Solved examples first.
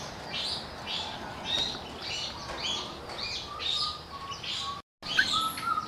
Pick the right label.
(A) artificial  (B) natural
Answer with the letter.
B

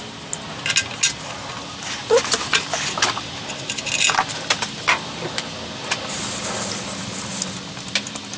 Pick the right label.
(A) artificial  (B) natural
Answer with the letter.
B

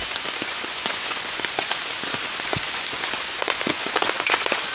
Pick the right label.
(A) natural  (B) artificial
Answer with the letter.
B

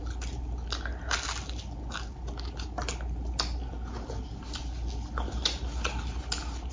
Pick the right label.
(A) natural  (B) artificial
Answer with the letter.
A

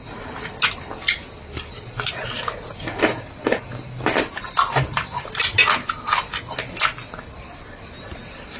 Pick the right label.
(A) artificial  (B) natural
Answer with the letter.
B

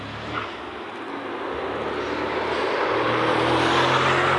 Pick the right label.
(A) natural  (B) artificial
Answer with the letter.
A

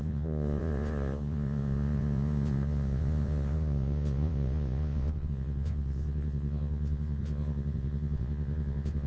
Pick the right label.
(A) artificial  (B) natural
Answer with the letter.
A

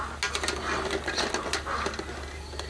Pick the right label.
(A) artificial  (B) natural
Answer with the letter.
B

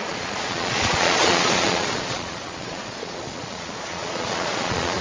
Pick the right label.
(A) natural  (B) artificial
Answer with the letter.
B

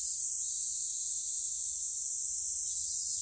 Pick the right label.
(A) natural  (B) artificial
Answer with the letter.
A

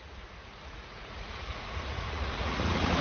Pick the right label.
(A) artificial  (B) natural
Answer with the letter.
A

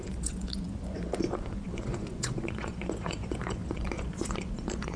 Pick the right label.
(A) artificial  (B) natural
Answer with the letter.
A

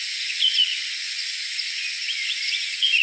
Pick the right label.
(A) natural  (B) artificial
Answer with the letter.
B